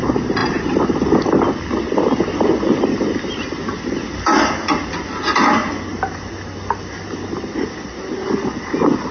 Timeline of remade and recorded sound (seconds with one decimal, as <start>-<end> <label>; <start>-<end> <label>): 0.0-9.1 recorded